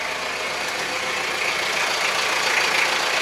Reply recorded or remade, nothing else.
recorded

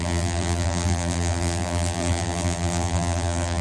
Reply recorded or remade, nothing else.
remade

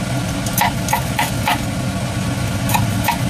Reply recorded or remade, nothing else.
recorded